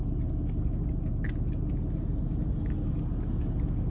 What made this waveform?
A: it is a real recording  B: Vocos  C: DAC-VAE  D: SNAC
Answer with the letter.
A